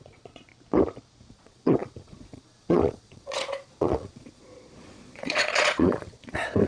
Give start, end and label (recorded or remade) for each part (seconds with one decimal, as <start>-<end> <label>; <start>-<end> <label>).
0.0-0.5 remade; 0.5-1.3 recorded; 1.3-6.7 remade